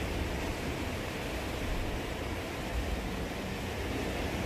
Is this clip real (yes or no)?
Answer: yes